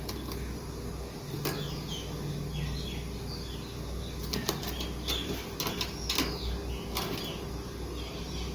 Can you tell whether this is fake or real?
real